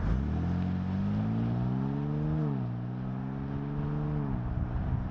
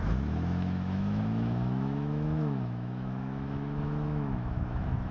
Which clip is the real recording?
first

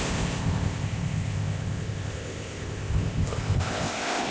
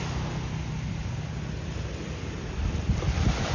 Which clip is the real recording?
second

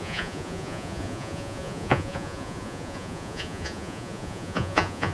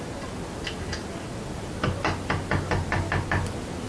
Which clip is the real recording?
second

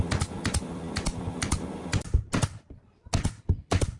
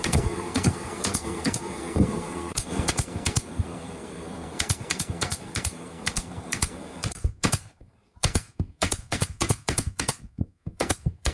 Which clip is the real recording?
first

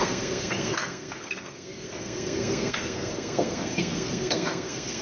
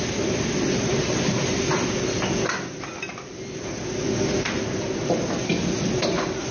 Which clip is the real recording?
second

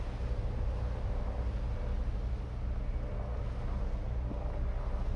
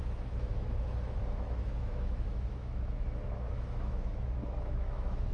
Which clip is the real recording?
first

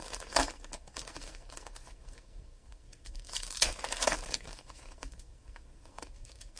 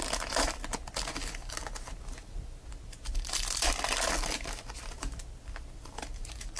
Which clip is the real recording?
second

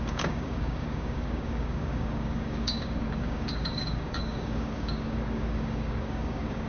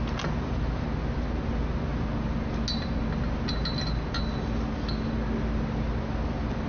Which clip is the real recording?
second